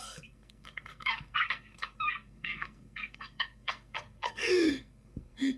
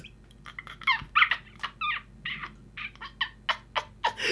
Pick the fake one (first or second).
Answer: first